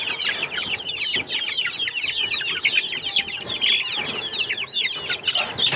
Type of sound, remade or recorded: recorded